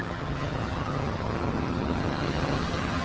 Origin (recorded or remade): remade